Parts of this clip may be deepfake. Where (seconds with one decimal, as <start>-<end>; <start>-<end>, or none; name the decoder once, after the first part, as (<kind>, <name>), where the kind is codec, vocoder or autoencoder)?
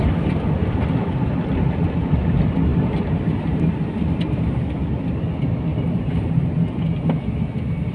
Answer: 2.7-3.7 (vocoder, BigVGAN v2); 5.7-6.5